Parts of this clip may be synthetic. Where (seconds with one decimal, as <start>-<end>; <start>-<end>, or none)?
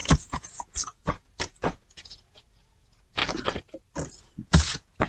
0.0-3.2; 4.2-5.1